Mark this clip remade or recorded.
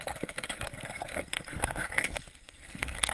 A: remade